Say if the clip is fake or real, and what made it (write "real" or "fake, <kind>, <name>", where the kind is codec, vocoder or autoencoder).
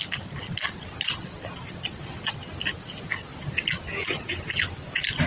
real